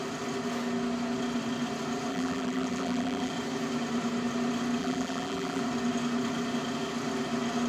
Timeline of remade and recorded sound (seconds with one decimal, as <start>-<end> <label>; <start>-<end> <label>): 0.0-2.1 recorded; 2.1-3.3 remade; 3.3-4.8 recorded; 4.8-5.6 remade; 5.6-7.7 recorded